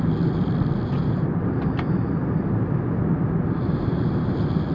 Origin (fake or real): real